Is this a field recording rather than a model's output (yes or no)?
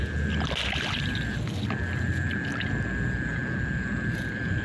yes